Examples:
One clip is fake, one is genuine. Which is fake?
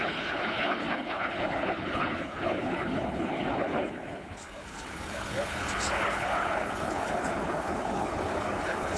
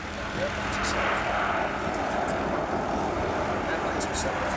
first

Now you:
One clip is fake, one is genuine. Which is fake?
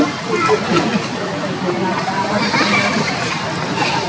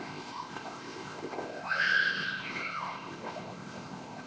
second